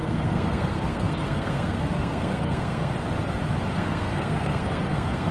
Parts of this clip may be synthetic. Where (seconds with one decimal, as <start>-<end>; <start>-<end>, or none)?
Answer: 0.0-2.9; 3.7-5.3